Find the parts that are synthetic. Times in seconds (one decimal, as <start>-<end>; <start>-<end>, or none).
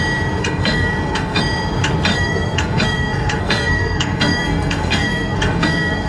0.4-1.4; 2.1-6.1